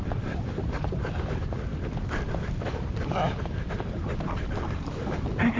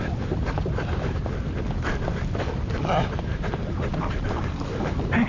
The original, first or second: second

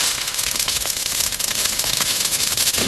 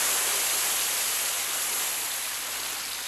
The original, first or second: second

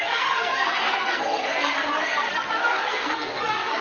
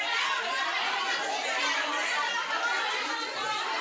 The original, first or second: second